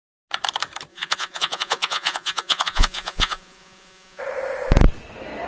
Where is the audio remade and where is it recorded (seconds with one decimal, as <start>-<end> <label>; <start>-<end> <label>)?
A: 0.0-0.9 recorded; 0.9-4.2 remade; 4.2-5.5 recorded